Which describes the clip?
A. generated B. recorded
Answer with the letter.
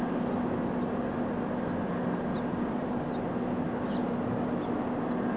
B